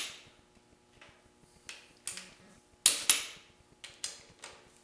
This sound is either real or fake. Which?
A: real